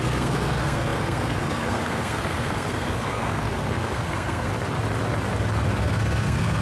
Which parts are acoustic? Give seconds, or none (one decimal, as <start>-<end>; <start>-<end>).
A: 4.5-5.8

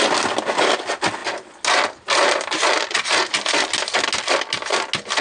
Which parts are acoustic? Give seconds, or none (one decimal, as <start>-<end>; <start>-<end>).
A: 0.0-5.2

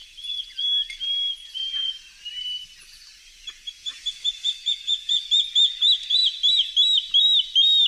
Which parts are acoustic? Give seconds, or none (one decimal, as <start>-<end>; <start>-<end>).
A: 0.6-1.4; 1.9-4.6; 5.3-7.9

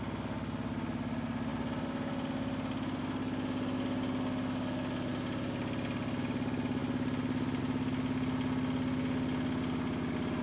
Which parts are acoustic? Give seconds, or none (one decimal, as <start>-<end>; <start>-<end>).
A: 0.0-10.4

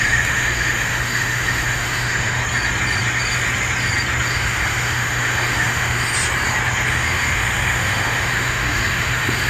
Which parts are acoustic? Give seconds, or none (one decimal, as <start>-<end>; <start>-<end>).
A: 2.4-4.3; 6.1-6.9

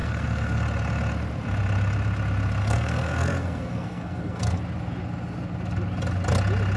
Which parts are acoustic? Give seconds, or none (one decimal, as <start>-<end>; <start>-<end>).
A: 0.6-2.6; 4.6-6.8